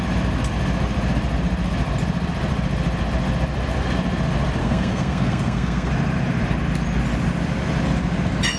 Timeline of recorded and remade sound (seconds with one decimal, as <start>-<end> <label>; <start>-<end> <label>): 0.0-4.6 recorded; 4.6-5.9 remade; 5.9-8.6 recorded